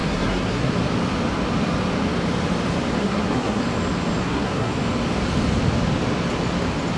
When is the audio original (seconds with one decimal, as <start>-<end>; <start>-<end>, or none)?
0.7-3.0; 3.6-4.2; 4.7-7.0